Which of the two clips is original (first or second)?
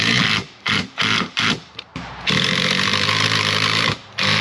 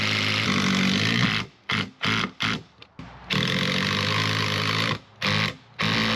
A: second